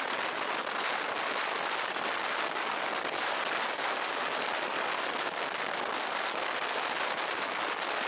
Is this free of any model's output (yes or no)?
yes